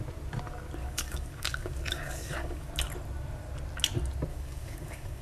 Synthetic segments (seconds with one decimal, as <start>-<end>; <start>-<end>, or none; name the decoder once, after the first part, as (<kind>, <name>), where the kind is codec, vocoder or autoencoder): 0.8-2.7 (codec, DAC); 4.3-5.2